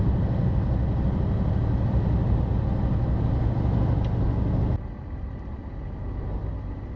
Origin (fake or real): real